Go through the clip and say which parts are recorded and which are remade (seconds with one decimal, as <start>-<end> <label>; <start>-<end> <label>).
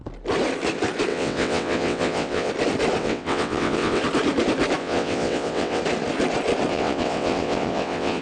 0.0-1.1 recorded; 1.1-2.5 remade; 2.5-3.0 recorded; 3.0-4.0 remade; 4.0-4.8 recorded; 4.8-5.8 remade; 5.8-6.7 recorded; 6.7-8.2 remade